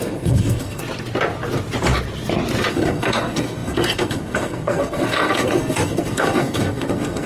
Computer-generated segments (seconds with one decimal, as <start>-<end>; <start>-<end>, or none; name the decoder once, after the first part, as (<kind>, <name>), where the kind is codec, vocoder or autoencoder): 0.0-0.8 (codec, SNAC); 2.7-7.3